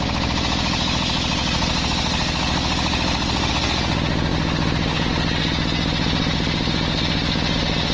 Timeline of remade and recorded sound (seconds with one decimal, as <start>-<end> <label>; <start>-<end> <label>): 0.0-7.9 recorded